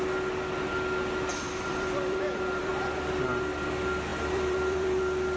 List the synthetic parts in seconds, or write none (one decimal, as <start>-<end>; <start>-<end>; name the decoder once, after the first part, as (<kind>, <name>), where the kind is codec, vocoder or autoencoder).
1.3-2.7 (vocoder, BigVGAN v2); 4.1-5.0